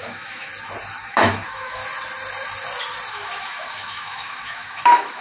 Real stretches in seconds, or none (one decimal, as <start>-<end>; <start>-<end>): 0.5-1.0; 1.8-3.1